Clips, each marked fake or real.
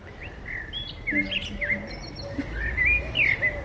real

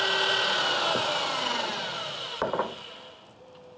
real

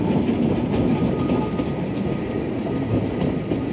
real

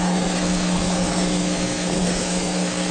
fake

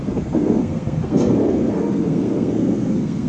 fake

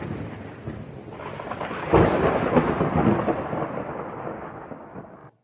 real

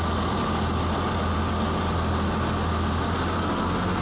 real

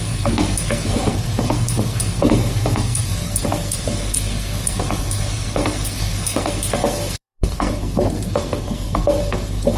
fake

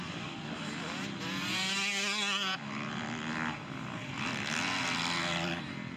real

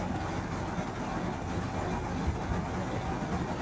real